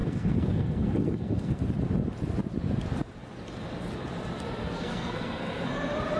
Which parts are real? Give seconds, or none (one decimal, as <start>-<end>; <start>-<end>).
1.6-4.6; 5.7-6.2